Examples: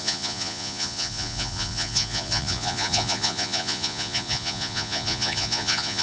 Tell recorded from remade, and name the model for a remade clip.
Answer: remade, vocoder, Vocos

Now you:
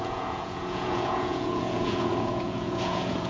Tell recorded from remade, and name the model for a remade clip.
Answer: remade, vocoder, Vocos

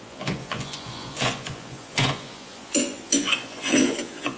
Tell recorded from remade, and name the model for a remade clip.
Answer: remade, vocoder, Vocos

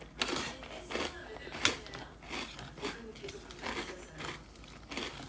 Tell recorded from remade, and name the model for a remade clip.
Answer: recorded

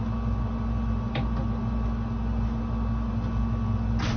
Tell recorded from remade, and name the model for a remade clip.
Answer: recorded